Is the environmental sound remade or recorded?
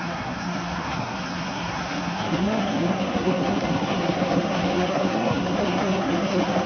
remade